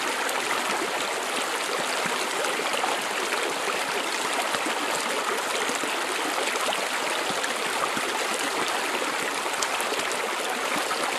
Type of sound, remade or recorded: recorded